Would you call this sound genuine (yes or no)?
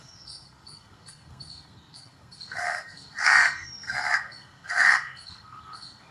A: no